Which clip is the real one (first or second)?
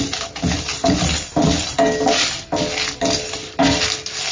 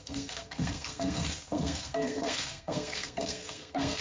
first